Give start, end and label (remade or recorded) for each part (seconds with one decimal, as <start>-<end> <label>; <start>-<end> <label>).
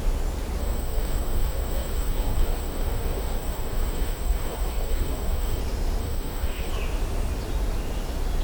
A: 0.0-0.6 recorded; 0.6-5.6 remade; 5.6-6.0 recorded; 6.0-6.7 remade; 6.7-8.4 recorded